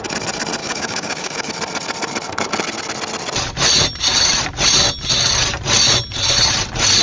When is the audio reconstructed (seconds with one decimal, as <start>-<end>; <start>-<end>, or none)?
0.6-1.5